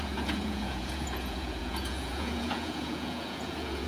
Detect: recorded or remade remade